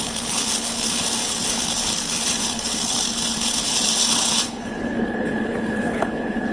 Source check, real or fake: fake